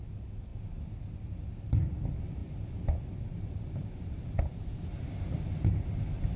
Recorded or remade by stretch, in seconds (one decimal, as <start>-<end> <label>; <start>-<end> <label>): 0.0-6.4 recorded